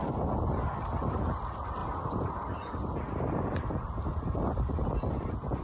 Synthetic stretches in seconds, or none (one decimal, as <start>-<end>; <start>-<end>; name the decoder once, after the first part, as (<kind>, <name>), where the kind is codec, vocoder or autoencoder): none